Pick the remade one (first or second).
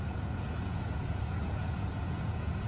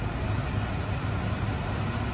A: first